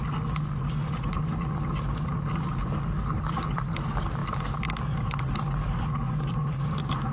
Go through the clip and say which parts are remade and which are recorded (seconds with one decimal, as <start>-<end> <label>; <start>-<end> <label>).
0.0-7.1 recorded